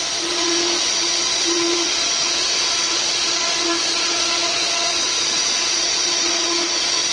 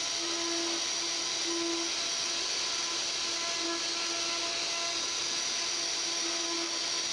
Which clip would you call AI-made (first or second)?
first